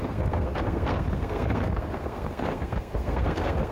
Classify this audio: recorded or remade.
remade